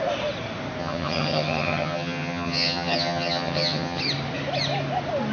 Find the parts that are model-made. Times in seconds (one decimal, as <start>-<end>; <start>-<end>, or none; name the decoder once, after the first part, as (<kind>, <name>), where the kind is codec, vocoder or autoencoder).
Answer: 0.8-4.0 (vocoder, HiFi-GAN)